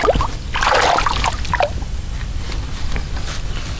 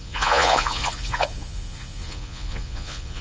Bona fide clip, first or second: first